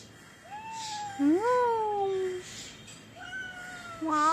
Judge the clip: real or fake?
real